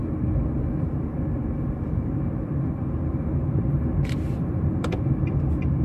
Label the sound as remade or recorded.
remade